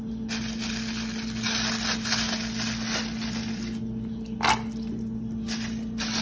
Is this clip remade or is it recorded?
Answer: recorded